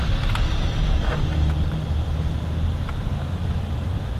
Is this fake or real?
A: real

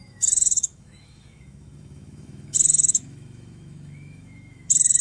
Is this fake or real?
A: fake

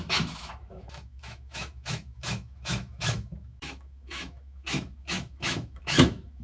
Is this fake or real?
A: fake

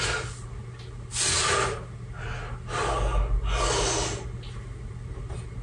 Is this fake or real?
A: real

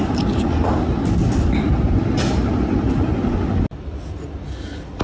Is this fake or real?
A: real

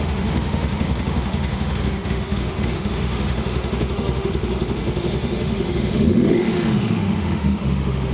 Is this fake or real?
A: fake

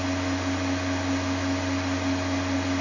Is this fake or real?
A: real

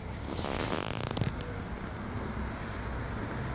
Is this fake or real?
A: real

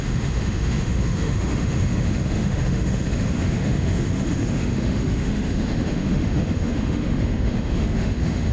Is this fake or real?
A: fake